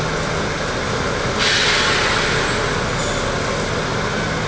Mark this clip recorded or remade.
recorded